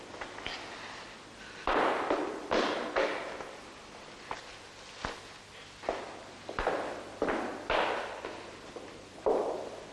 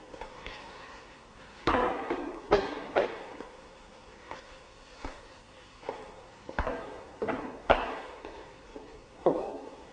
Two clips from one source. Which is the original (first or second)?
first